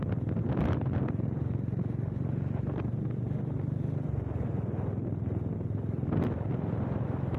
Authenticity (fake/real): real